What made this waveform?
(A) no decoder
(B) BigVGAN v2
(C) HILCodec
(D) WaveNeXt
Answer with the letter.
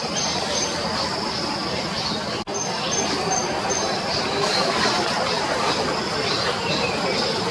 A